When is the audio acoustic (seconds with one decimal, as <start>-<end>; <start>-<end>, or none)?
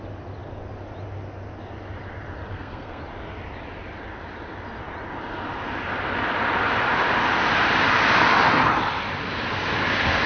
0.0-2.5; 3.0-10.3